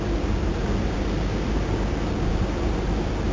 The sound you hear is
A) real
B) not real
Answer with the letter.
A